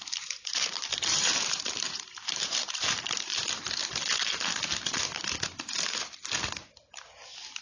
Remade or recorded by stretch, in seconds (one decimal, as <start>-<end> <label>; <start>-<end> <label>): 0.0-3.3 remade; 3.3-7.6 recorded